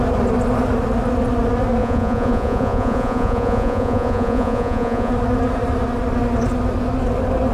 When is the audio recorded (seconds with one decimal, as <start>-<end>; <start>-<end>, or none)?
0.0-1.8; 5.1-7.5